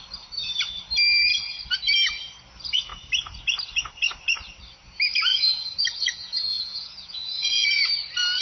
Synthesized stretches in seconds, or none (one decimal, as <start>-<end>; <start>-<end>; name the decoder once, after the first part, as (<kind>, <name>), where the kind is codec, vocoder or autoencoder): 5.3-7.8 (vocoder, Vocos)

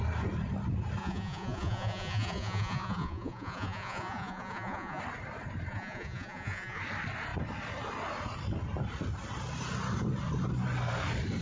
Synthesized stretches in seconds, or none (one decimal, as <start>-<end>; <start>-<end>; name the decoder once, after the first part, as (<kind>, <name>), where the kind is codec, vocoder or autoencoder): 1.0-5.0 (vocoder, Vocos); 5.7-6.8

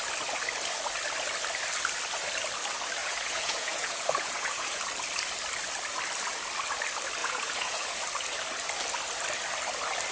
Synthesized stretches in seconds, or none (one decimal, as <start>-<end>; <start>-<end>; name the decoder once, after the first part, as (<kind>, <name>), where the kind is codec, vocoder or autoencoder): 3.0-4.8 (vocoder, Vocos); 7.2-8.0

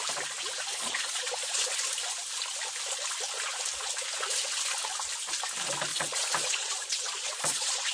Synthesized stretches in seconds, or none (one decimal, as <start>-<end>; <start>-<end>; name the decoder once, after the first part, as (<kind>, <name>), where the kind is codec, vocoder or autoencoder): 0.7-1.6 (vocoder, Vocos); 5.9-7.9

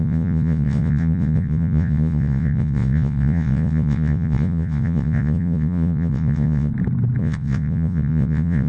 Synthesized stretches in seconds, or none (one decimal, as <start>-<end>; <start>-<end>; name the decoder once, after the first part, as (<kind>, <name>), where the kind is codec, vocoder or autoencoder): 0.0-6.7 (vocoder, Vocos); 7.2-8.7

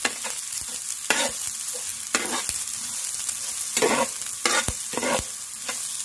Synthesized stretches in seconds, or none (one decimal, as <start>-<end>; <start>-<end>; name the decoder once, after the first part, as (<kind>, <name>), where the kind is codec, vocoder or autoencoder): none

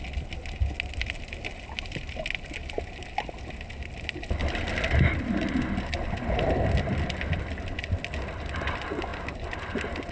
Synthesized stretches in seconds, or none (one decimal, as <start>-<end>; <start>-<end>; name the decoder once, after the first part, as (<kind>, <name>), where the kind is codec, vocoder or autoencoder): none

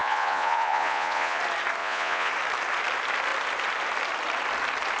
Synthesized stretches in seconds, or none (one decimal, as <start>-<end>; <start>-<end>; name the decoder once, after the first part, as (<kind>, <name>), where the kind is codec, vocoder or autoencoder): 0.0-1.4 (vocoder, Vocos); 1.8-2.3